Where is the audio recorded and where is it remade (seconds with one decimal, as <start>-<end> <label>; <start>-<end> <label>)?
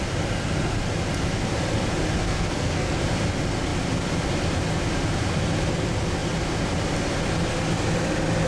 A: 0.0-2.2 recorded; 2.2-3.0 remade; 3.0-8.5 recorded